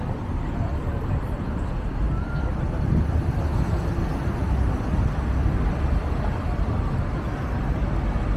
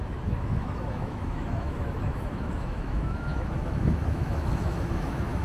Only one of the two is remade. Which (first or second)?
second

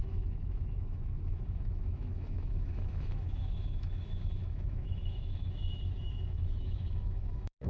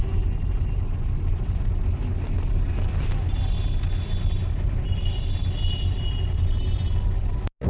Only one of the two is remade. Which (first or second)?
first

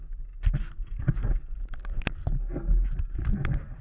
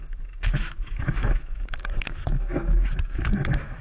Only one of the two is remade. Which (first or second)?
second